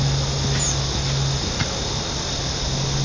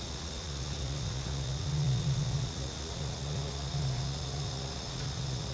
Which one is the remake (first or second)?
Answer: second